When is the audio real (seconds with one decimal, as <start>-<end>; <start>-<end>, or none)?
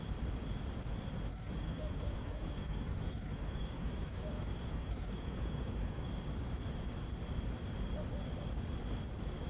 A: 0.0-1.3; 6.1-9.5